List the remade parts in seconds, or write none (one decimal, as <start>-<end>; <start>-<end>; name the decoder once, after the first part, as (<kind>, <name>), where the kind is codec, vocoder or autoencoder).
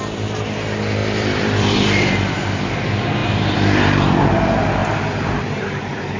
1.0-2.8 (vocoder, BigVGAN v2); 3.2-4.3; 4.8-5.4